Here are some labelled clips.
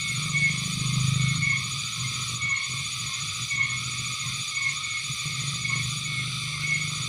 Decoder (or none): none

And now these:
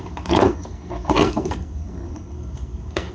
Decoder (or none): codec, SNAC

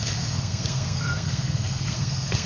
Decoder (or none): codec, SNAC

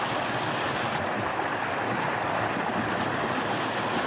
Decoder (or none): none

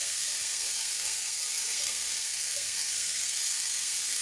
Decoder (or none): codec, SNAC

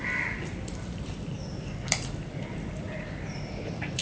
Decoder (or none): vocoder, BigVGAN v2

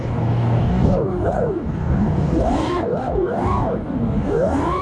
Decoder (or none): codec, DAC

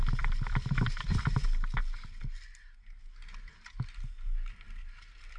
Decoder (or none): none